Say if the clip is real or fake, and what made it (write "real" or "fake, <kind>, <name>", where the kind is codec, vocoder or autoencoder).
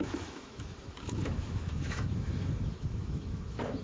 fake, autoencoder, DAC-VAE